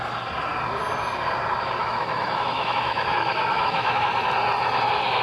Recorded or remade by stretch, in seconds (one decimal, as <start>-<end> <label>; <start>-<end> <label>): 0.0-1.8 recorded; 1.8-4.1 remade; 4.1-5.2 recorded